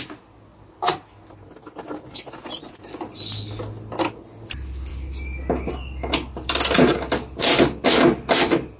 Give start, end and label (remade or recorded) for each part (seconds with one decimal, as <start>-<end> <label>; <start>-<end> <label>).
0.0-8.8 recorded